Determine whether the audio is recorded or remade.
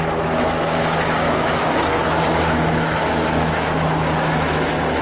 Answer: remade